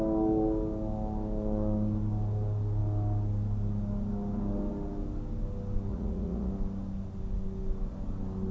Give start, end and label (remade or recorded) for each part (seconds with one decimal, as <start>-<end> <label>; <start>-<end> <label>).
0.0-5.9 recorded; 5.9-6.5 remade; 6.5-8.5 recorded